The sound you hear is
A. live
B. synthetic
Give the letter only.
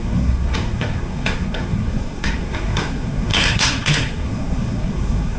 B